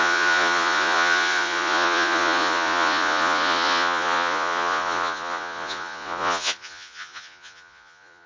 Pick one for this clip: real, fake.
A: fake